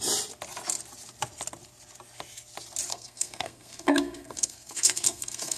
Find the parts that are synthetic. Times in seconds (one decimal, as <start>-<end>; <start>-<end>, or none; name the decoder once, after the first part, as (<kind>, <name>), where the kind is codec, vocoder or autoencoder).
2.9-5.6 (codec, SNAC)

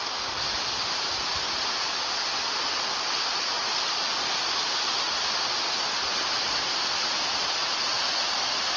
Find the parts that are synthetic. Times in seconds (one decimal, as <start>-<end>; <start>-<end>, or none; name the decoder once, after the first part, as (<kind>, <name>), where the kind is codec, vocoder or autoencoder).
none

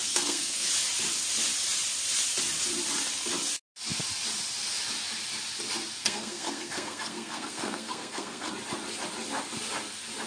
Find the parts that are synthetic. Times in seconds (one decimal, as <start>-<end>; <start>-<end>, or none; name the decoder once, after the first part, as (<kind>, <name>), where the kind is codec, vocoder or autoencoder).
0.0-0.7 (codec, SNAC); 6.0-8.5

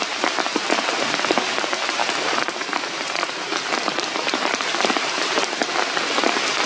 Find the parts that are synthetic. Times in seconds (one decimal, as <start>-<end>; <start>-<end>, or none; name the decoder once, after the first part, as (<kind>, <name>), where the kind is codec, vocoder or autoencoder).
0.5-1.1 (vocoder, BigVGAN v2); 2.0-6.0

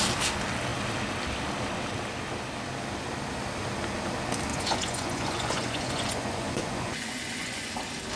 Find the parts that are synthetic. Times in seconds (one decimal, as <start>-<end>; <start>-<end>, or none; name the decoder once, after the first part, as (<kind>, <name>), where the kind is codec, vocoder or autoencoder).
4.5-7.7 (vocoder, Vocos)